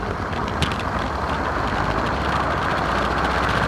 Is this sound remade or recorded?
recorded